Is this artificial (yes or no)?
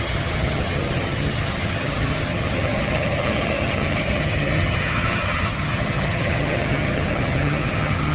yes